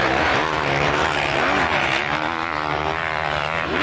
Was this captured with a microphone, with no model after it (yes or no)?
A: no